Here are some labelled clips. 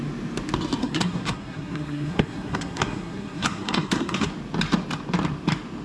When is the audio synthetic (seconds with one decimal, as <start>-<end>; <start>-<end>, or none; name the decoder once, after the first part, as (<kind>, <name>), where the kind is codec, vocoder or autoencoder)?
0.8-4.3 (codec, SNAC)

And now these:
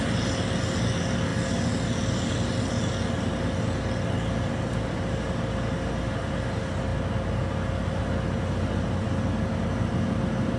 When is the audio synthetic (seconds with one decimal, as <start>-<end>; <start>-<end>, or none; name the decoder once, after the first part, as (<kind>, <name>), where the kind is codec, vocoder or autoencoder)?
none

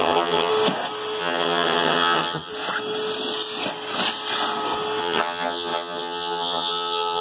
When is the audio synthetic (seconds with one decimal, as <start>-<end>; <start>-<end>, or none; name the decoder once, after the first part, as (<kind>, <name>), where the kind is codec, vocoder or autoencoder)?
0.0-0.5 (vocoder, HiFi-GAN); 1.2-2.5; 5.0-7.2

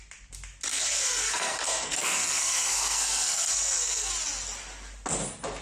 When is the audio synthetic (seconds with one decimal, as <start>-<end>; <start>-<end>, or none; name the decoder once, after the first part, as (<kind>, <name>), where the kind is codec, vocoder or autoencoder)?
0.7-4.1 (codec, SNAC)